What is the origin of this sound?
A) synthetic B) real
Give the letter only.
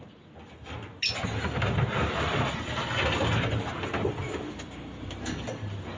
B